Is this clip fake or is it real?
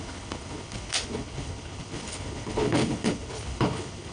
fake